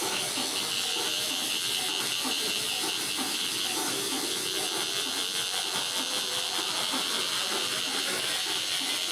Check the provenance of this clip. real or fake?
fake